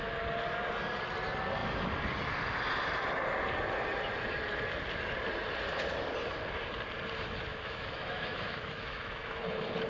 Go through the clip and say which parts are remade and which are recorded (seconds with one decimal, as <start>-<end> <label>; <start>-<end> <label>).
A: 0.0-7.5 recorded; 7.5-9.4 remade; 9.4-9.9 recorded